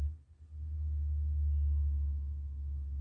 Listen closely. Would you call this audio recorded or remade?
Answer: recorded